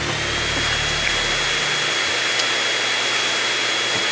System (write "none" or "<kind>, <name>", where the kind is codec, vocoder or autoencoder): none